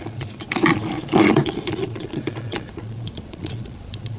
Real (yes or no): no